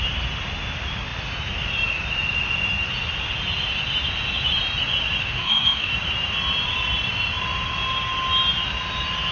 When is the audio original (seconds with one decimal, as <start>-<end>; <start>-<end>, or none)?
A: 0.0-5.2; 5.9-9.3